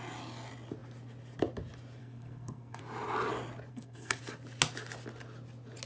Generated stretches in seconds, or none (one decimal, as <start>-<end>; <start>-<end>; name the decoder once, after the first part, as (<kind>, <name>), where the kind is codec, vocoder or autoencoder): 2.0-2.8 (codec, SNAC); 3.7-4.2